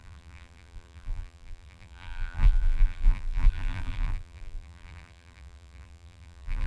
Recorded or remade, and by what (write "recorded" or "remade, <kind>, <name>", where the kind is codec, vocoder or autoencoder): remade, vocoder, BigVGAN v2